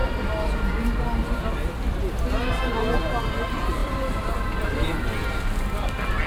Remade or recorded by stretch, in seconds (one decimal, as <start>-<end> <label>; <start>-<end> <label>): 0.0-6.3 recorded

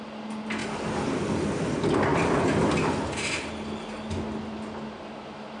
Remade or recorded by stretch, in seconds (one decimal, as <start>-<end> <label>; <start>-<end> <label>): 0.0-0.6 recorded; 0.6-1.4 remade; 1.4-5.6 recorded

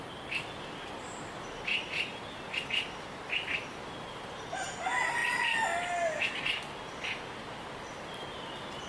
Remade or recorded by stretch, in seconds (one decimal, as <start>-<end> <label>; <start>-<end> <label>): 0.0-8.9 recorded